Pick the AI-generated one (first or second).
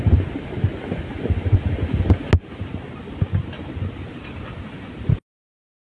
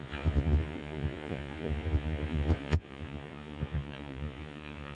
second